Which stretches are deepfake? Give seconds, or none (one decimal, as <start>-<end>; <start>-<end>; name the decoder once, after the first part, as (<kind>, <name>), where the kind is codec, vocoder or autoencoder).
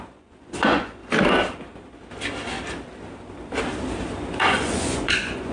0.0-1.0 (vocoder, Vocos); 4.3-5.5